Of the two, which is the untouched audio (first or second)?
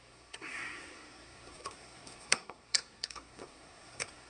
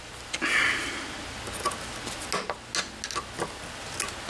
second